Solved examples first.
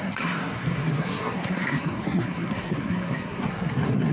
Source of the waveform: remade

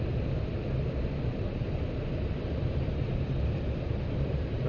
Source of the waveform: recorded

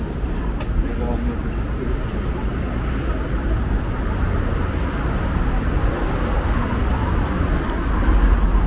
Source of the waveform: recorded